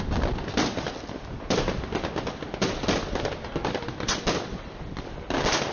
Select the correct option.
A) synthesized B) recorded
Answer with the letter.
B